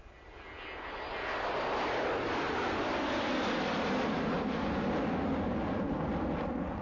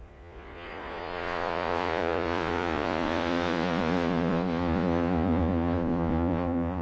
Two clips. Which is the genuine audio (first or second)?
first